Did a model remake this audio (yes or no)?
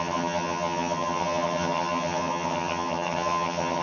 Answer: yes